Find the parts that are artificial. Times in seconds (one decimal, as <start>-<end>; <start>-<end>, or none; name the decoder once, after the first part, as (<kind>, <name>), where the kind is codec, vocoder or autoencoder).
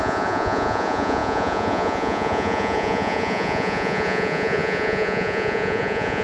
0.0-6.2 (vocoder, Vocos)